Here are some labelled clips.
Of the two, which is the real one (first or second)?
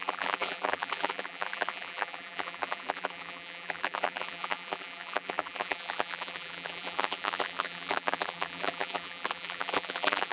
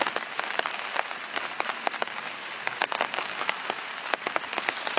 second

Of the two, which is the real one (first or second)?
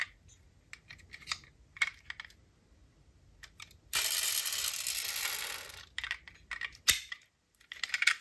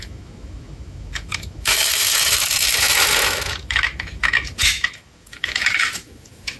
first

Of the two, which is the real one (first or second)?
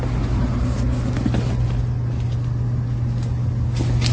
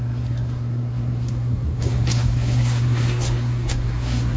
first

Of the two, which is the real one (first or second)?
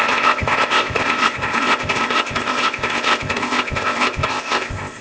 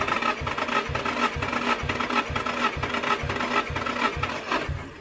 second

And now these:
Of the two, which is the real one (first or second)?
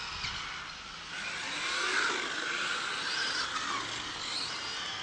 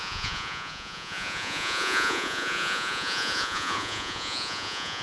first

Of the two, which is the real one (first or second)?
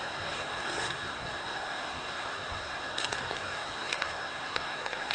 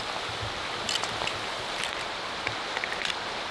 second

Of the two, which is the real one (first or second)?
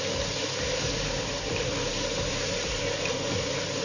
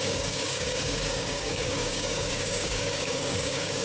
first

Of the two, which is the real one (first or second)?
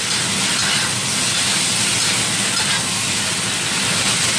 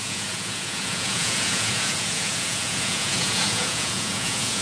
first